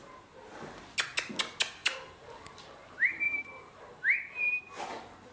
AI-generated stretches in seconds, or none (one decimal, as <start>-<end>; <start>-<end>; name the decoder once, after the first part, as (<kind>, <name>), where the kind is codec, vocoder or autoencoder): 1.8-4.6 (vocoder, BigVGAN v2)